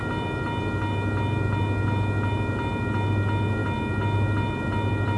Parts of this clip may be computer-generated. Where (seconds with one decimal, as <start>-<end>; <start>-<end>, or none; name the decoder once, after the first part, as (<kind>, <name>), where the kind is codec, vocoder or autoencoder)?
none